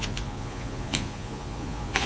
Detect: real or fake fake